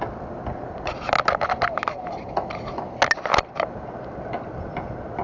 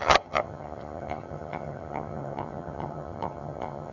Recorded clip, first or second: first